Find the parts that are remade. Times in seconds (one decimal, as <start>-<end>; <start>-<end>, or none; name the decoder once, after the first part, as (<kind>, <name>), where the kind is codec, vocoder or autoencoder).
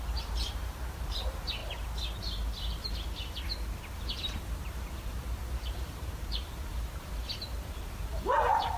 0.0-1.6 (vocoder, BigVGAN v2); 4.0-8.8